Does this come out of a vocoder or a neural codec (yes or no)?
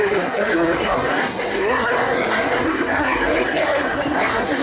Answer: yes